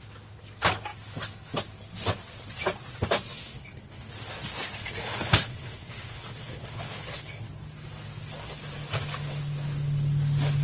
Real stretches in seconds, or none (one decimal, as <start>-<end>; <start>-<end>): 0.0-3.4; 4.1-4.8; 7.5-10.6